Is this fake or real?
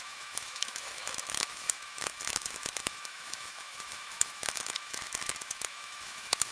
fake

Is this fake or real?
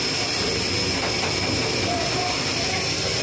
real